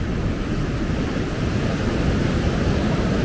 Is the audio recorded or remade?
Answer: recorded